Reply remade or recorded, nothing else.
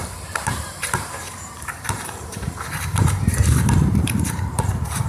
remade